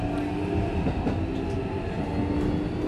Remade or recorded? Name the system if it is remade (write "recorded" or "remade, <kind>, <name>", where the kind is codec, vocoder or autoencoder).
recorded